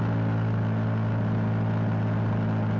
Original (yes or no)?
yes